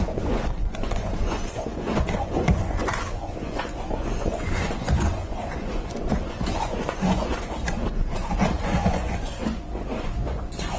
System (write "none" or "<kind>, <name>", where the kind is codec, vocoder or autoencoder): vocoder, Vocos